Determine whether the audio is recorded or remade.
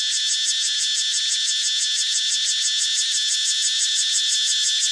recorded